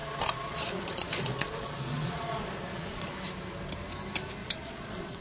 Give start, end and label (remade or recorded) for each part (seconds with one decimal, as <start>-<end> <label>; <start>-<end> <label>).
0.0-3.1 remade; 3.1-4.4 recorded; 4.4-5.2 remade